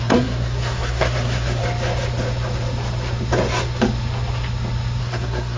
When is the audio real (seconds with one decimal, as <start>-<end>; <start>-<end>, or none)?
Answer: 1.6-5.0